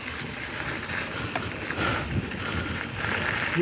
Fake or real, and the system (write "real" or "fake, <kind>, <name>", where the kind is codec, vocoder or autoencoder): real